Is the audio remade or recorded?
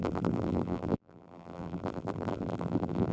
remade